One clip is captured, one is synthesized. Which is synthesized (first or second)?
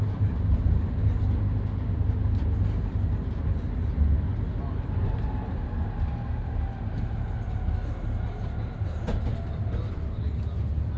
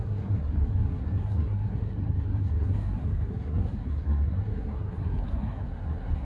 second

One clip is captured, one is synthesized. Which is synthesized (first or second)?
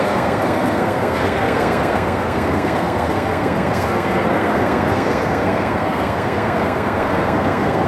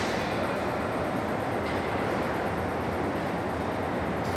first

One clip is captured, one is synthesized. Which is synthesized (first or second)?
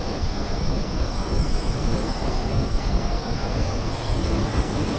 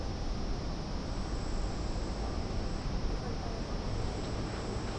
first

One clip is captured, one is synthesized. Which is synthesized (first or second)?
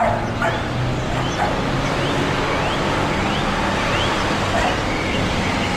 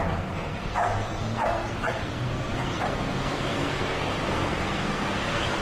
second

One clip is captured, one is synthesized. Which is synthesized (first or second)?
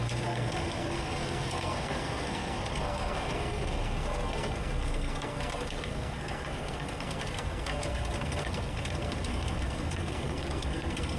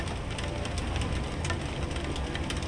first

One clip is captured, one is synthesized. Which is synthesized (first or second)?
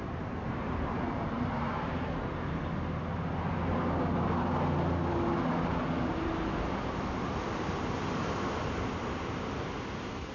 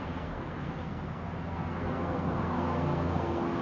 second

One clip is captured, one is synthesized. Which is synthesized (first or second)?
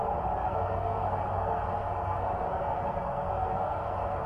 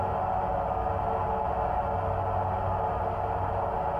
first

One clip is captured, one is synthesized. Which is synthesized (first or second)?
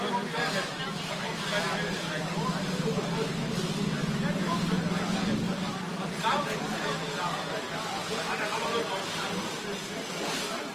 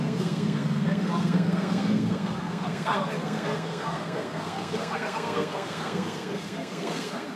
second